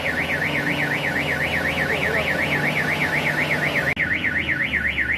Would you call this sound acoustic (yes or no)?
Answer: yes